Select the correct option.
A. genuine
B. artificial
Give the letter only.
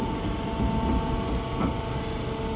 A